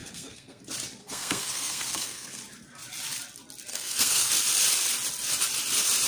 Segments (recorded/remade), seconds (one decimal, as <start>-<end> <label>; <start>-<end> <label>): 0.0-0.6 remade; 0.6-1.0 recorded; 1.0-2.4 remade; 2.4-3.7 recorded; 3.7-4.3 remade; 4.3-6.1 recorded

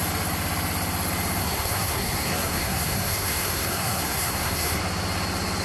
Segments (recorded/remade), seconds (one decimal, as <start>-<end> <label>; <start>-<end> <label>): 0.0-1.4 recorded; 1.4-4.8 remade; 4.8-5.6 recorded

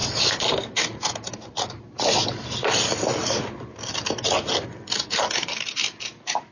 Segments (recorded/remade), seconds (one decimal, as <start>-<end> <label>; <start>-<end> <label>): 0.0-6.5 recorded